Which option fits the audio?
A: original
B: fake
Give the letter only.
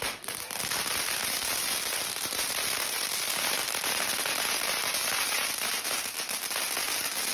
A